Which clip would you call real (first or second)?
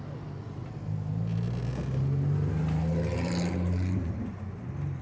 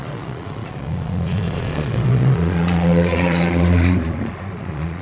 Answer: first